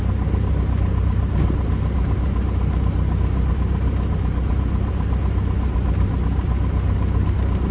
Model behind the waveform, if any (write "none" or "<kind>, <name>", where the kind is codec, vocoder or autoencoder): none